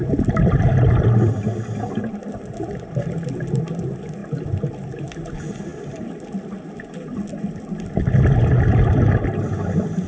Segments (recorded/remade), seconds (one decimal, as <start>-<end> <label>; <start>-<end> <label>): 0.0-10.1 recorded

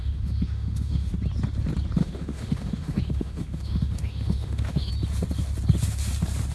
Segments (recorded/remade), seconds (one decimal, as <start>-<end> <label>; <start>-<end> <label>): 0.0-1.1 remade; 1.1-2.0 recorded; 2.0-4.9 remade; 4.9-6.5 recorded

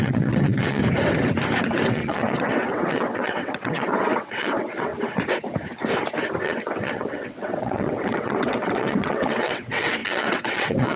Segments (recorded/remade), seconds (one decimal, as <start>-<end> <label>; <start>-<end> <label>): 0.0-0.8 remade; 0.8-1.9 recorded; 1.9-4.9 remade; 4.9-6.4 recorded; 6.4-11.0 remade

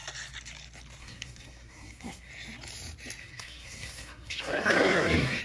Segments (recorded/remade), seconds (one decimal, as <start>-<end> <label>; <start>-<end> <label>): 0.0-1.0 recorded; 1.0-2.3 remade; 2.3-3.2 recorded; 3.2-5.4 remade

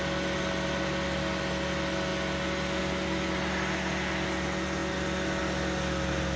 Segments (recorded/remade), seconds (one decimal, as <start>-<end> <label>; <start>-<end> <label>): 0.0-6.4 recorded

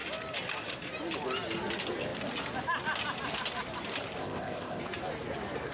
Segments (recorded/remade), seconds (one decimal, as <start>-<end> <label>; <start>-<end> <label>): 0.0-4.2 recorded; 4.2-4.8 remade; 4.8-5.7 recorded

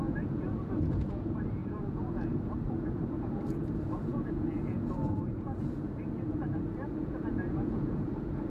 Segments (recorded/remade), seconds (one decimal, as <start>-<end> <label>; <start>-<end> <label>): 0.0-8.5 remade